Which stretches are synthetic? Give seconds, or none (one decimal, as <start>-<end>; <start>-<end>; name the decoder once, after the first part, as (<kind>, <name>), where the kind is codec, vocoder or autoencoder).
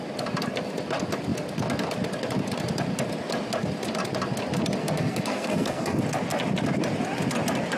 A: 4.8-6.0 (codec, SNAC)